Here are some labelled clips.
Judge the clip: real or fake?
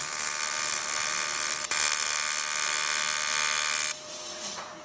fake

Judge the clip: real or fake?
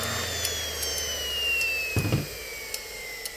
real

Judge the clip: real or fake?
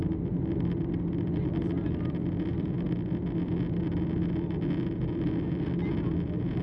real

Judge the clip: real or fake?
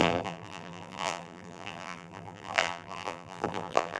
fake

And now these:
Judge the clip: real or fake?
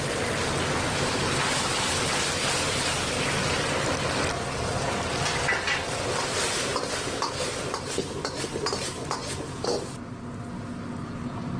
real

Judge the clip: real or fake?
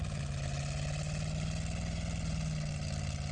real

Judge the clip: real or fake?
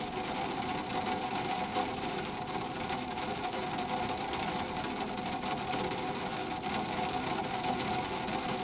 fake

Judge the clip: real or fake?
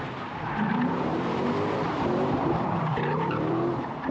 fake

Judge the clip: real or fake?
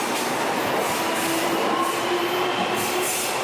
real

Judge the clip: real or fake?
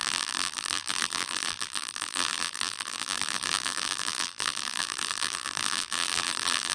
fake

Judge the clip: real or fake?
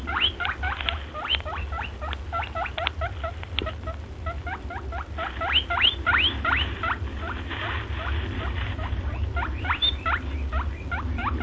real